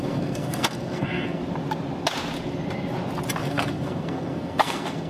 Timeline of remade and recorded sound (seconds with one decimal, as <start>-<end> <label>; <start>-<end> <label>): 0.0-1.4 remade; 1.4-3.4 recorded; 3.4-5.1 remade